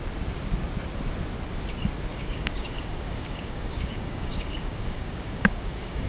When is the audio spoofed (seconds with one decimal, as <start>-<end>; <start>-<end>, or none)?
2.1-6.1

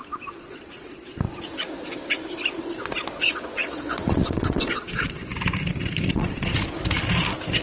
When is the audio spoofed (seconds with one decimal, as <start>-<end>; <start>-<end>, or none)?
0.0-1.1; 3.1-5.3; 6.1-6.5

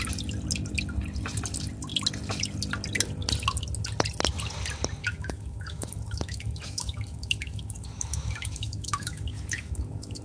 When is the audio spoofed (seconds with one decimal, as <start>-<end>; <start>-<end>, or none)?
5.0-10.2